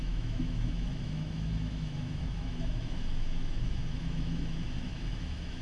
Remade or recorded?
remade